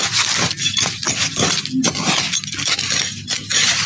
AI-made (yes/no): no